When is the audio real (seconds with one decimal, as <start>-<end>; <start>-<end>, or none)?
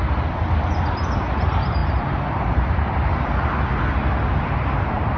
0.0-1.8; 3.2-5.2